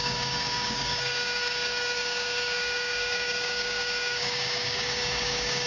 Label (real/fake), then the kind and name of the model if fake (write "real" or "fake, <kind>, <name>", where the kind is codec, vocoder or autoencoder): fake, codec, DAC